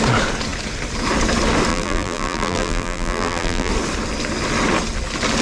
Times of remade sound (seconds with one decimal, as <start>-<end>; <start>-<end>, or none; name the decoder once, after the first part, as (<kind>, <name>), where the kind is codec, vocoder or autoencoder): 1.7-3.7 (vocoder, BigVGAN v2)